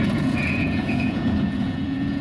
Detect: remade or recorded remade